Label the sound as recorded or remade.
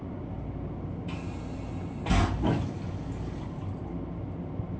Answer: recorded